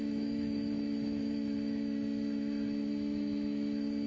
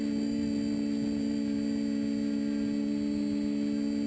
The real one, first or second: second